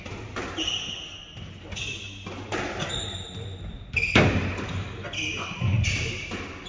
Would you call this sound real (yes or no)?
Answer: yes